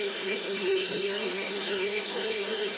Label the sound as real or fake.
fake